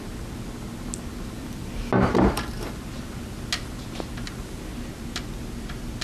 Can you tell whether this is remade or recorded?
recorded